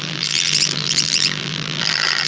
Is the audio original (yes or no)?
no